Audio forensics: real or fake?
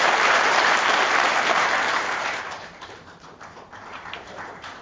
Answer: fake